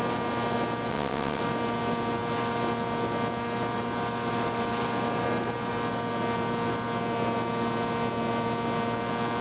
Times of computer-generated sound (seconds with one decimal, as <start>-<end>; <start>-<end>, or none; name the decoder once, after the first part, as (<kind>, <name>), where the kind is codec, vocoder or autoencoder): 0.9-1.4 (vocoder, WaveNeXt)